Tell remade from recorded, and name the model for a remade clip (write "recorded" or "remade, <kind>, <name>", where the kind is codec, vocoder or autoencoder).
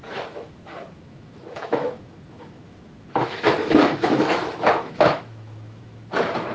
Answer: remade, autoencoder, DAC-VAE